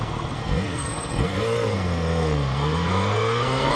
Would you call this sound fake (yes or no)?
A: yes